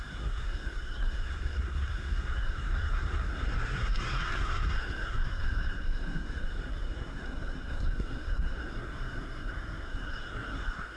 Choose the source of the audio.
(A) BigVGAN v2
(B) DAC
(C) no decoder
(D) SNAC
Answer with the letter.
D